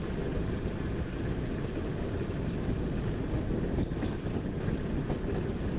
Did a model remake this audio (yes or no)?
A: no